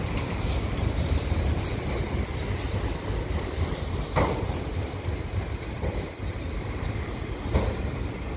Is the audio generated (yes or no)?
no